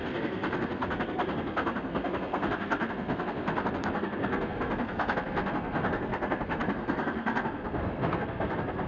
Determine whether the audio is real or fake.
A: fake